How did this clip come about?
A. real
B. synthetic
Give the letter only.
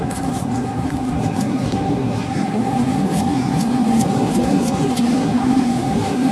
B